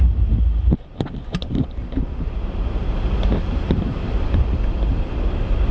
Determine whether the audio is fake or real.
real